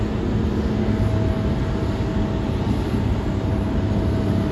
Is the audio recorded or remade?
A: recorded